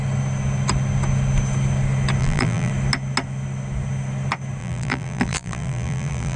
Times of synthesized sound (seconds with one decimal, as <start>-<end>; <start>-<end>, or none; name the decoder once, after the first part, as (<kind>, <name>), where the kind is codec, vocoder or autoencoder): 2.2-2.7 (vocoder, BigVGAN v2); 4.6-6.4